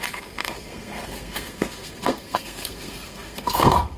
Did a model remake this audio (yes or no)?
yes